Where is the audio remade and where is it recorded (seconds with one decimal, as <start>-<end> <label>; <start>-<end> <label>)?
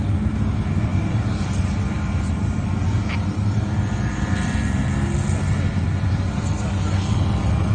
0.0-0.9 recorded; 0.9-1.7 remade; 1.7-7.7 recorded